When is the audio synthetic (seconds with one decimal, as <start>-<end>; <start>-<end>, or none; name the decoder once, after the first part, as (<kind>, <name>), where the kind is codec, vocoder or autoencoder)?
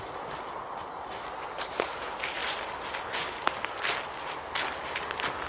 none